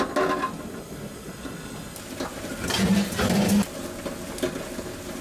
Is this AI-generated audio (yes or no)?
no